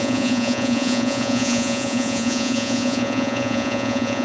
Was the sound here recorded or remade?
remade